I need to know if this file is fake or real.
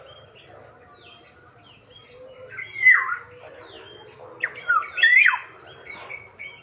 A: real